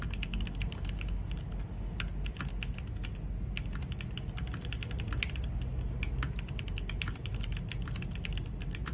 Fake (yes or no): no